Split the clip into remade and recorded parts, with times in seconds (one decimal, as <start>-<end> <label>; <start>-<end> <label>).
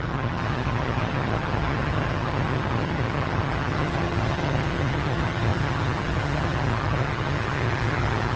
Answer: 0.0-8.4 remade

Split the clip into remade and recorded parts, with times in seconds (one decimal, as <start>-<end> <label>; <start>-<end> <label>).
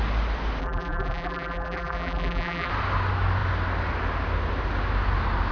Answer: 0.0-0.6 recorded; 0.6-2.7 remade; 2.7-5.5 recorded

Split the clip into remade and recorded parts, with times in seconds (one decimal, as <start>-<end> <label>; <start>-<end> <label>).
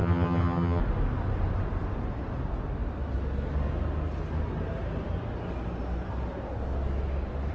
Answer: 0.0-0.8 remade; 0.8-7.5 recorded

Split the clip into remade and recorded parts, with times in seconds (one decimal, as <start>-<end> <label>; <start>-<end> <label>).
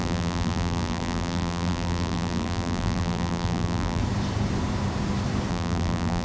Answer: 0.0-4.0 remade; 4.0-5.5 recorded; 5.5-6.2 remade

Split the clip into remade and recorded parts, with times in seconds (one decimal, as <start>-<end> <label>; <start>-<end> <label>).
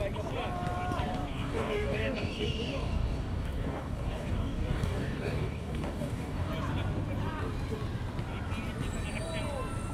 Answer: 0.0-1.3 recorded; 1.3-6.5 remade; 6.5-9.9 recorded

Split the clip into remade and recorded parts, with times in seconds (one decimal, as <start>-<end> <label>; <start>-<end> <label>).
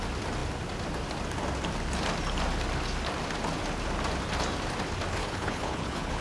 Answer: 0.0-5.2 recorded; 5.2-6.2 remade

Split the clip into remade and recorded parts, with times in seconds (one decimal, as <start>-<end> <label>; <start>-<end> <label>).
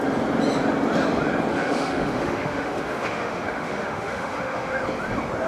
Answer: 0.0-1.5 recorded; 1.5-4.8 remade; 4.8-5.5 recorded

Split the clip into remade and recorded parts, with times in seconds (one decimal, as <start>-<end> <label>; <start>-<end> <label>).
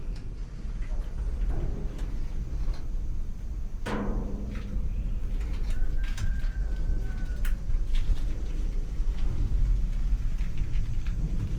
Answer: 0.0-2.0 recorded; 2.0-11.6 remade